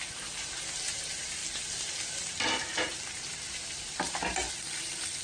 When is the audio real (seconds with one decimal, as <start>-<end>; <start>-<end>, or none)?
0.0-5.2